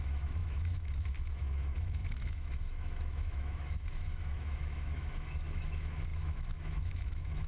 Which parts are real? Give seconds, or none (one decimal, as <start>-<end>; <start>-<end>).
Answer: none